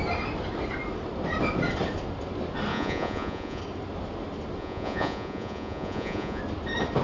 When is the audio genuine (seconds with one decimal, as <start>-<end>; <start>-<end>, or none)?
0.0-2.7; 3.6-4.6; 6.4-7.0